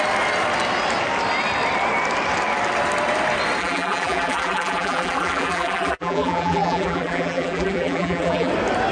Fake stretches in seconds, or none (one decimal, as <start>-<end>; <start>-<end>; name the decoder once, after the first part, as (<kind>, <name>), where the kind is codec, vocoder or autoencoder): 3.6-8.5 (vocoder, BigVGAN v2)